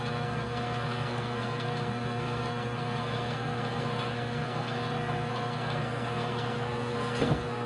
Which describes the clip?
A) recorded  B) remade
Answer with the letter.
B